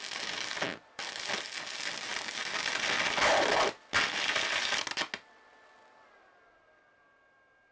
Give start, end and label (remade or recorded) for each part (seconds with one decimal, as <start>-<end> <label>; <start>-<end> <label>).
0.0-7.7 recorded